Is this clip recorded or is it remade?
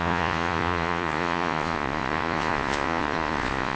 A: remade